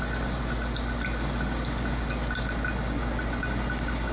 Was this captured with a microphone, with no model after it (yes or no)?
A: yes